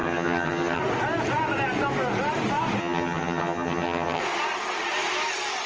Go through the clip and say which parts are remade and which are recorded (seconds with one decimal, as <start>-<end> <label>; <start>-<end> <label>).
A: 0.0-0.8 remade; 0.8-2.8 recorded; 2.8-4.2 remade; 4.2-5.7 recorded